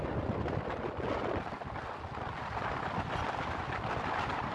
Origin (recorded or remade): recorded